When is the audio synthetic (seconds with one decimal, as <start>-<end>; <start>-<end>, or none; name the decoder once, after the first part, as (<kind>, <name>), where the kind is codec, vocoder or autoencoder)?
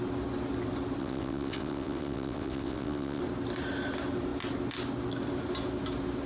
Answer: 1.0-3.2 (vocoder, WaveNeXt)